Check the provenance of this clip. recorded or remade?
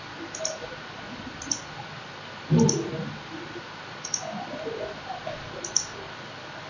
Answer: recorded